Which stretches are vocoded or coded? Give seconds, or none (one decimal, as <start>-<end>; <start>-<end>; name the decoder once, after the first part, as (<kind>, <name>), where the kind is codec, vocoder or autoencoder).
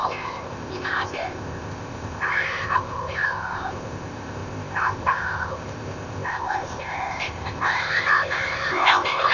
0.0-9.3 (codec, ZipCodec)